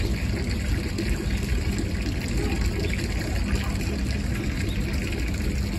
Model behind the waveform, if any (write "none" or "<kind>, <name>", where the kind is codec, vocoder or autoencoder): none